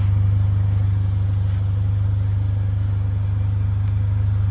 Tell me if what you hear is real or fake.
real